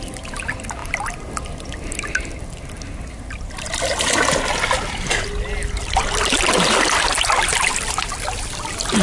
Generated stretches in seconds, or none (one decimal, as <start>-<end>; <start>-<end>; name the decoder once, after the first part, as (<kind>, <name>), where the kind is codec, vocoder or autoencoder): 7.5-8.0 (vocoder, BigVGAN v2)